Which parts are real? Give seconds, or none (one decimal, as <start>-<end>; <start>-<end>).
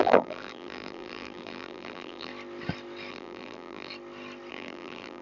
2.3-3.1; 3.9-4.5